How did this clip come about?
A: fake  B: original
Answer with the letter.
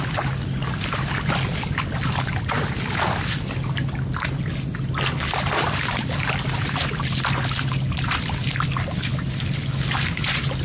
B